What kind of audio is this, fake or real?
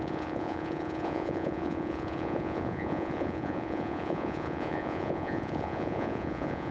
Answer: fake